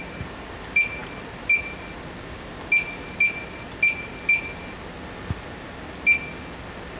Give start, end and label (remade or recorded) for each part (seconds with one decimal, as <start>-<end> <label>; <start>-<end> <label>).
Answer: 0.0-7.0 recorded

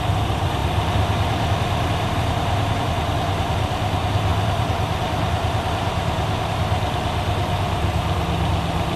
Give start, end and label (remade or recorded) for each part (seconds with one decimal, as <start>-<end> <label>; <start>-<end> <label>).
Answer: 0.0-9.0 recorded

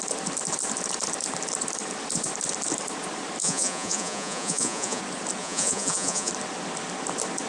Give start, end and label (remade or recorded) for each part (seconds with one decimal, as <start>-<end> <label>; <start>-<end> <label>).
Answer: 0.0-3.4 recorded; 3.4-5.0 remade; 5.0-5.4 recorded; 5.4-6.3 remade; 6.3-7.5 recorded

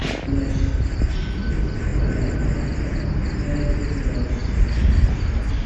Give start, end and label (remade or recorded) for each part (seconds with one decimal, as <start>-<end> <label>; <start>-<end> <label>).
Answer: 0.0-5.7 recorded

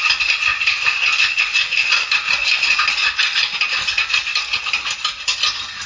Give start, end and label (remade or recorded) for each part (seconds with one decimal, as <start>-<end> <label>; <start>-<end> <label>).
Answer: 0.0-5.9 recorded

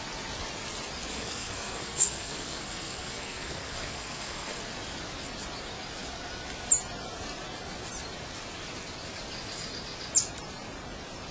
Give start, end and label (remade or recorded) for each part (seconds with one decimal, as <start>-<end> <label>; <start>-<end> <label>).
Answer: 0.0-1.1 recorded; 1.1-4.6 remade; 4.6-11.3 recorded